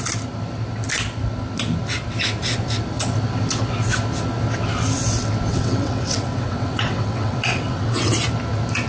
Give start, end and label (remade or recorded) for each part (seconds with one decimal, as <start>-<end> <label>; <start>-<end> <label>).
0.0-5.5 recorded; 5.5-8.1 remade; 8.1-8.9 recorded